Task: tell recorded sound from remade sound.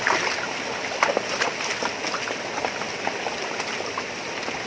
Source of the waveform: recorded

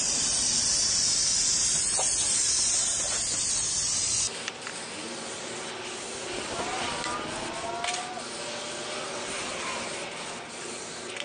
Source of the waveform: recorded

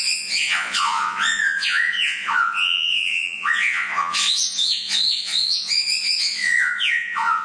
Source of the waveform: remade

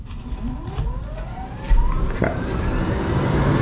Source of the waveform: remade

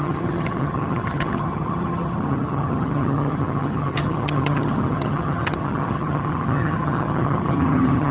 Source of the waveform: remade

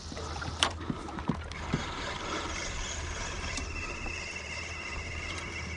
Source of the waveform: remade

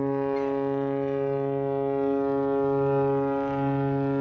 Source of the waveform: recorded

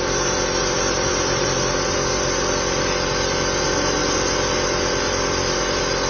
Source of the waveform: remade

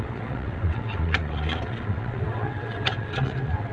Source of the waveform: remade